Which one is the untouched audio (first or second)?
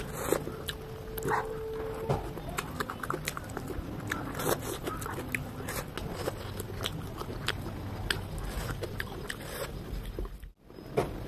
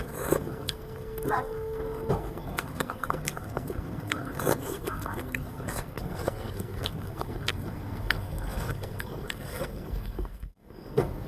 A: first